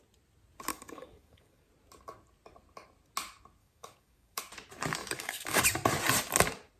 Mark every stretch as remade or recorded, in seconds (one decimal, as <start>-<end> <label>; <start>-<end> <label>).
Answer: 0.0-0.7 recorded; 0.7-1.7 remade; 1.7-3.6 recorded; 3.6-4.4 remade; 4.4-5.0 recorded; 5.0-5.6 remade; 5.6-6.8 recorded